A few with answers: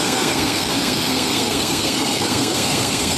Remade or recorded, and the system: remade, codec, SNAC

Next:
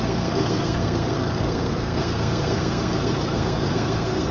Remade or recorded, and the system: remade, codec, SNAC